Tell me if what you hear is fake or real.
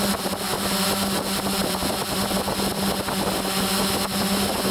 real